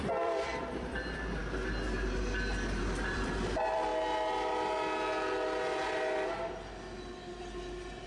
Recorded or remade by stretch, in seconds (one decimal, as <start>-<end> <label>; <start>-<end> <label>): 0.0-1.4 remade; 1.4-2.8 recorded; 2.8-3.9 remade; 3.9-8.1 recorded